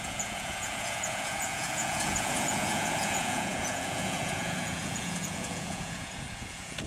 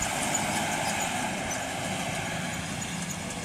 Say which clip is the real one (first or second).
second